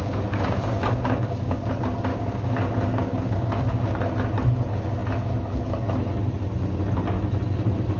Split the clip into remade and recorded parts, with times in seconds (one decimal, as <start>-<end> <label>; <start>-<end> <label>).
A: 0.0-1.7 remade; 1.7-2.1 recorded; 2.1-4.0 remade; 4.0-8.0 recorded